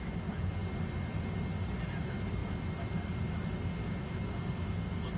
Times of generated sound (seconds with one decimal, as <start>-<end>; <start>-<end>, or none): none